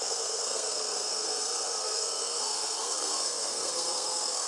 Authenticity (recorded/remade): remade